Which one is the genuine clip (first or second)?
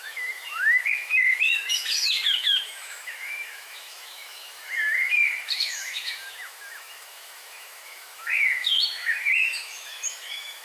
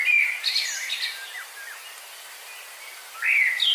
second